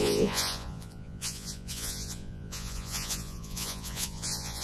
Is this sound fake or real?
fake